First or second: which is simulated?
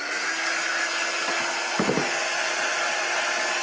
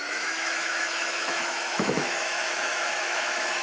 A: second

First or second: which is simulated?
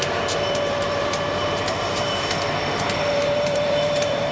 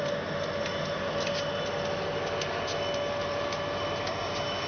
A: first